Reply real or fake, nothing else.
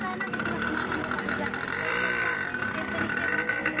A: real